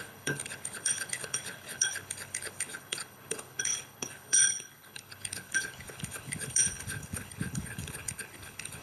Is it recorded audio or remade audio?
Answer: remade